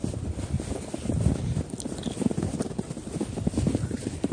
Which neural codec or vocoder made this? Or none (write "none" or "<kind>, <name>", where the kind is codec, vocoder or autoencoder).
none